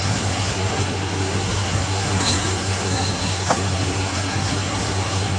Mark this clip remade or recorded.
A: remade